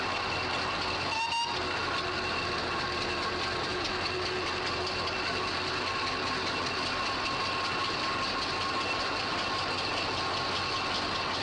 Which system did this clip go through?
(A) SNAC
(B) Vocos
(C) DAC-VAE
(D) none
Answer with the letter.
D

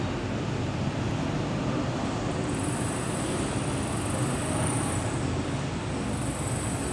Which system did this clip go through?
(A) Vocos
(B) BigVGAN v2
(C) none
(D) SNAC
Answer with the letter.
C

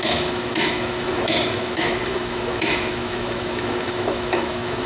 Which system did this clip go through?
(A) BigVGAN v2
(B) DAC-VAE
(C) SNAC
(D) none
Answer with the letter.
B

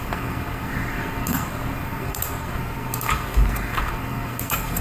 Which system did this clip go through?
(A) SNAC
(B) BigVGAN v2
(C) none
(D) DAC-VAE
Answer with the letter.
A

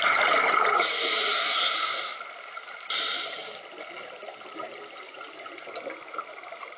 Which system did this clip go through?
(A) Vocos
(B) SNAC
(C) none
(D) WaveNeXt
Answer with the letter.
C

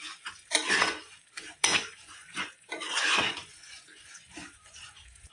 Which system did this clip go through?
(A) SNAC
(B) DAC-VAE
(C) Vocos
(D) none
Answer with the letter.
C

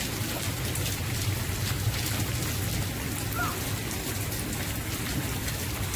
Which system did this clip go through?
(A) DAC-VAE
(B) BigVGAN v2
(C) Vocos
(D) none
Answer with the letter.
D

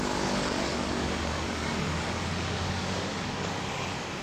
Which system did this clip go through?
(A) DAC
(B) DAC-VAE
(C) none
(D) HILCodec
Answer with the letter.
A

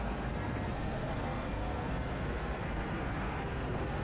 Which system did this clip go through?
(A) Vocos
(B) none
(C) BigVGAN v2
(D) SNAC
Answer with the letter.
D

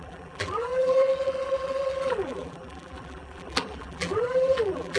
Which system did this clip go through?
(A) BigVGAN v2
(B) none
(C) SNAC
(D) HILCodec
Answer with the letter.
A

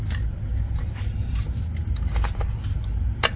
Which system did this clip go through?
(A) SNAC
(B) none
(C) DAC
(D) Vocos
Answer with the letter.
B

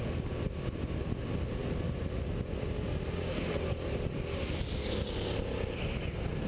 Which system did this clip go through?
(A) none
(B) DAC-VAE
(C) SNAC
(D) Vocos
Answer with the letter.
A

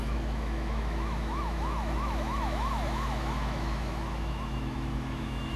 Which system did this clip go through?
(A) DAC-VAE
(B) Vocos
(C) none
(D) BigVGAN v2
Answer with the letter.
A